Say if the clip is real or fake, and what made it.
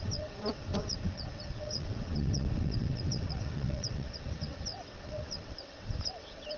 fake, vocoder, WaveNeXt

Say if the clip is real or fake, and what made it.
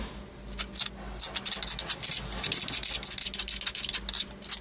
real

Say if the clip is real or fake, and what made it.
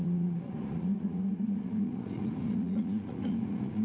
fake, vocoder, Vocos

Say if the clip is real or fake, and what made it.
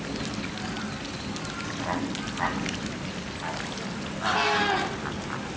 real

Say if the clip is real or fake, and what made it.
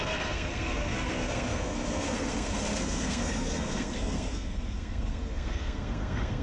fake, codec, SNAC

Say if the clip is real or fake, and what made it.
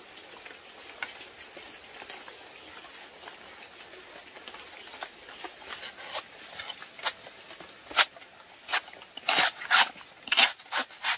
real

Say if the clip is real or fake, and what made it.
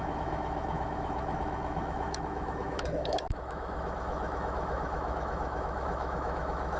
fake, autoencoder, DAC-VAE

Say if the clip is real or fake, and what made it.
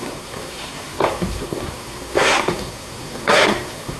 fake, codec, SNAC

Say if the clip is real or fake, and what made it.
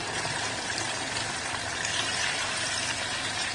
fake, vocoder, BigVGAN v2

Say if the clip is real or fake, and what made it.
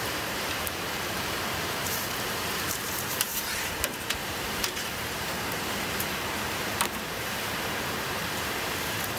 fake, vocoder, BigVGAN v2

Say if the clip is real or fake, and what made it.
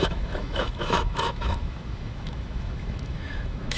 fake, autoencoder, DAC-VAE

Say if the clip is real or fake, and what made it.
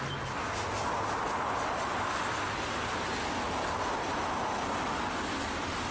real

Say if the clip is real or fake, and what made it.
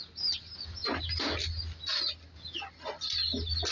real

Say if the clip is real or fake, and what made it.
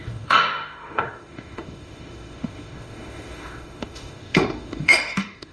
fake, autoencoder, DAC-VAE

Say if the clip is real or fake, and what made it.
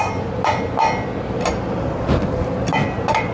real